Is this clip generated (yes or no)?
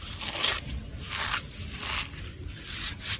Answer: no